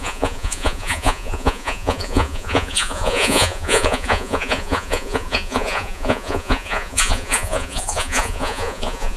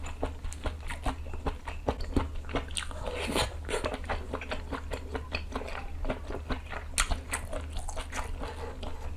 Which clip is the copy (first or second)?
first